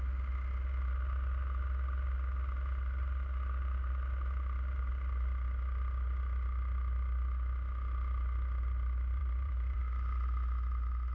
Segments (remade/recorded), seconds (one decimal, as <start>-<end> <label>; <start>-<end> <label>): 0.0-9.2 recorded; 9.2-9.8 remade; 9.8-11.1 recorded